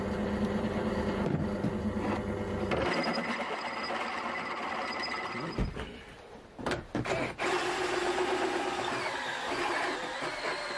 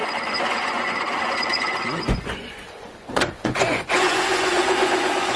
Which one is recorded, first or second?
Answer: first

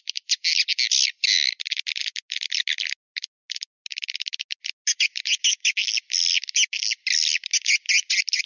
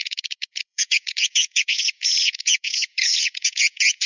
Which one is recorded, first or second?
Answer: first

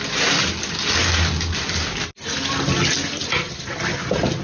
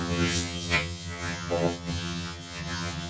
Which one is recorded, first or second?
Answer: first